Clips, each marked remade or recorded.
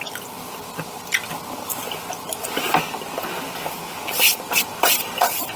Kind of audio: recorded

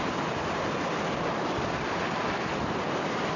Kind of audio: recorded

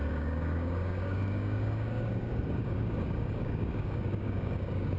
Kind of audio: remade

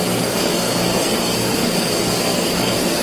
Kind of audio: remade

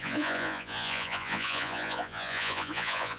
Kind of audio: remade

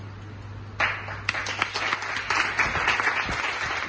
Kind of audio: recorded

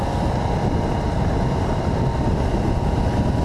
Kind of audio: recorded